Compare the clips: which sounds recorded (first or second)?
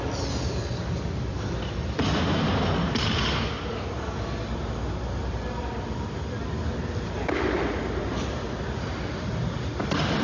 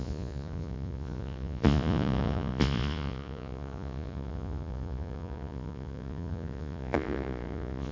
first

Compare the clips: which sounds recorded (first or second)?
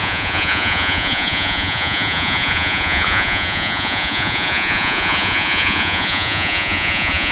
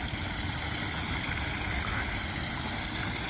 second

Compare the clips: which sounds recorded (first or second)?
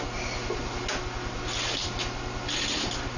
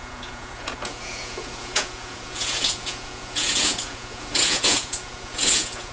first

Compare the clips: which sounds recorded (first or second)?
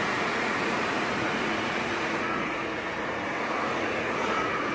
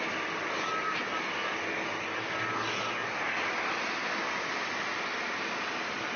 second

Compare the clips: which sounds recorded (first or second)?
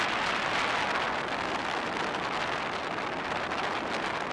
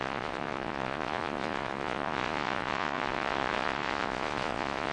first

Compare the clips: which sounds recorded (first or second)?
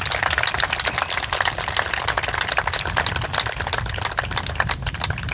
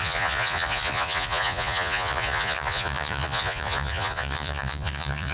first